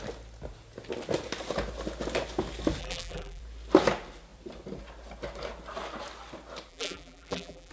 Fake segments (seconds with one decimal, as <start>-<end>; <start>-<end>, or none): 2.8-3.4; 6.7-7.7

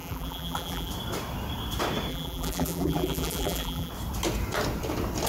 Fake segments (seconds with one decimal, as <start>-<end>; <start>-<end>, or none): 0.0-0.9; 2.1-3.9

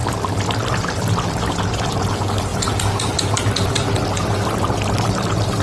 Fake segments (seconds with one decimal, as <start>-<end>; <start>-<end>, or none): 0.0-5.6

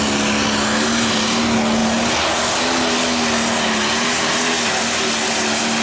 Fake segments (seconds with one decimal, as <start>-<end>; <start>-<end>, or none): none

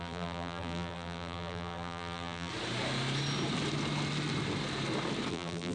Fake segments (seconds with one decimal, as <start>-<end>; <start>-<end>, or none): 0.0-2.5; 5.3-5.7

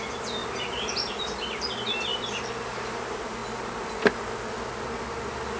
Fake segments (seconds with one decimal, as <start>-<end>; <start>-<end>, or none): 0.4-1.1